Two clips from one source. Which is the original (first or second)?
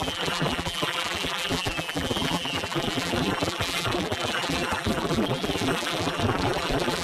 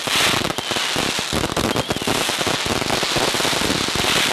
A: second